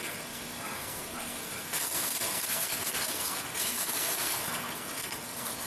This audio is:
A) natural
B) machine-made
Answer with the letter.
B